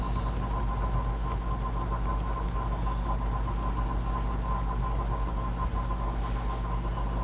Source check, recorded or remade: recorded